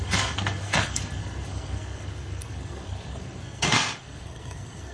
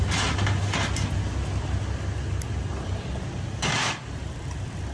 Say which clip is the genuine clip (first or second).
second